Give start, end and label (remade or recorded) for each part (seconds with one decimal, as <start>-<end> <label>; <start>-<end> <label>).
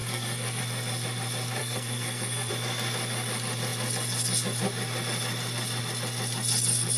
0.0-0.6 remade; 0.6-1.6 recorded; 1.6-2.5 remade; 2.5-7.0 recorded